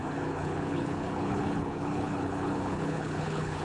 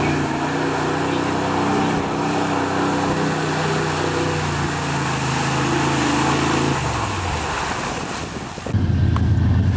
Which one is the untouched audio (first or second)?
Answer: second